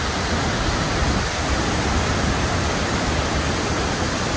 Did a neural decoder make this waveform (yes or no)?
no